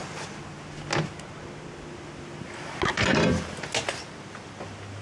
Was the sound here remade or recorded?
recorded